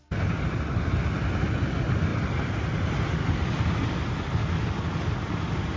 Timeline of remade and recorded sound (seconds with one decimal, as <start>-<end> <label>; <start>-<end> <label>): 0.0-5.8 recorded